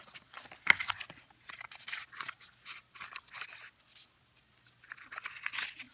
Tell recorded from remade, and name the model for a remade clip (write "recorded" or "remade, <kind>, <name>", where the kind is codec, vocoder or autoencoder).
recorded